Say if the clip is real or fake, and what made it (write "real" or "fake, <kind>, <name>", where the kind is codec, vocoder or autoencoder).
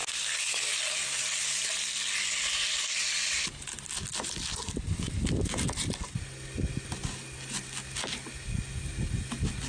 real